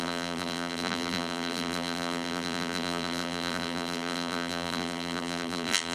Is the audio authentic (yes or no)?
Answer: no